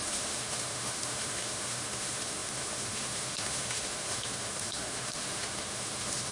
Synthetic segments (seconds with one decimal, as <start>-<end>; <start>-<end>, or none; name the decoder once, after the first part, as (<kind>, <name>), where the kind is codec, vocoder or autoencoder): 0.0-6.3 (autoencoder, DAC-VAE)